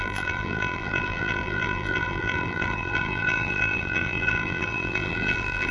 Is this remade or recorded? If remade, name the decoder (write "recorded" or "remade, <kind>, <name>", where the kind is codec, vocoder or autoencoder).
remade, vocoder, BigVGAN v2